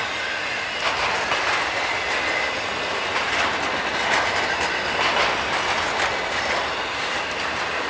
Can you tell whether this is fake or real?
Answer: real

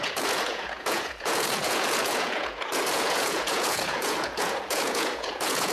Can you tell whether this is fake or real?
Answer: fake